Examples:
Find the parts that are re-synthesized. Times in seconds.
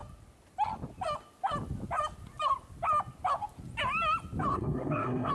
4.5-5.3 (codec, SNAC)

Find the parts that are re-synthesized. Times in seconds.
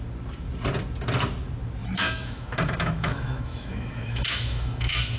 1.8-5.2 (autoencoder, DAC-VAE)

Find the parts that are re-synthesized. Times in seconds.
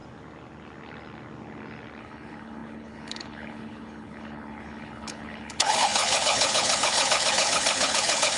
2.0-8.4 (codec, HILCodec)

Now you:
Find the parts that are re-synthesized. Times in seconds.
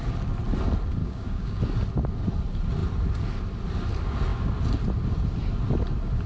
1.0-1.6 (codec, DAC)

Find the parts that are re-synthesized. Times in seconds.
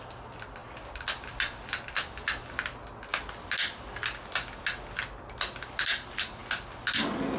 none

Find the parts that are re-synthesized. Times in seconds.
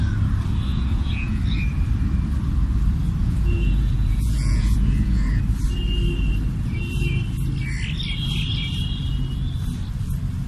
0.7-1.4 (vocoder, Vocos); 3.2-5.4